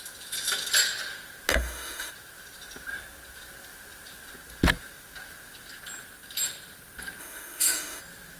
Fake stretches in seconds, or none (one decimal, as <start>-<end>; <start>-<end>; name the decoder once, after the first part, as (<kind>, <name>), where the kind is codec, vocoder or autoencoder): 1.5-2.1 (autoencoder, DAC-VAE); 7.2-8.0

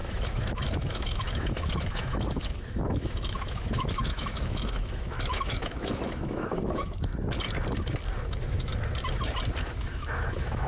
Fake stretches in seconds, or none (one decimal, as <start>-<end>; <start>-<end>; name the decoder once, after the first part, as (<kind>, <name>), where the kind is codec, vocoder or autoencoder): 0.0-7.1 (autoencoder, DAC-VAE); 8.2-8.7; 9.6-10.7

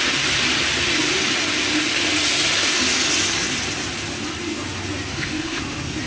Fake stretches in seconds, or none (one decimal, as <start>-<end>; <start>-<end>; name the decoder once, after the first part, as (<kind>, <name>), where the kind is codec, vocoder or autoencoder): 5.1-5.6 (autoencoder, DAC-VAE)